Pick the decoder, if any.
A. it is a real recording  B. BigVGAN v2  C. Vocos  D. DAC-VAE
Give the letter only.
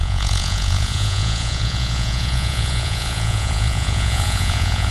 C